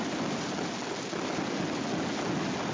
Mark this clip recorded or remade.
recorded